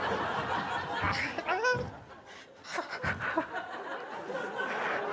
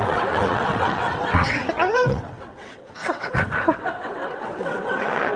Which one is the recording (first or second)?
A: first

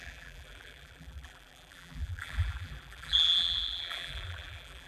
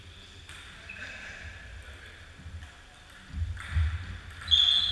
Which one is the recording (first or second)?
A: second